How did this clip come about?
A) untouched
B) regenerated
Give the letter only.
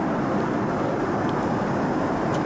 A